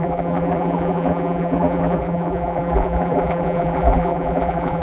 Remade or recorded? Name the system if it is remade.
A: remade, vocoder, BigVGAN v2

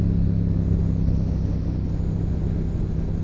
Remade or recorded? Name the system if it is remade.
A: recorded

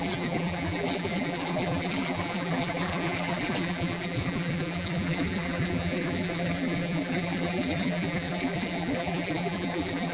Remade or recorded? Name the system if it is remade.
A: remade, vocoder, BigVGAN v2